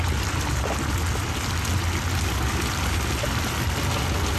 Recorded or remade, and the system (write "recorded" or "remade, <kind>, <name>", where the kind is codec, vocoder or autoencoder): recorded